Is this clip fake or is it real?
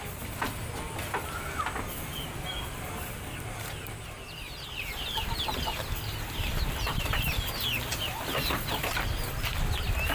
real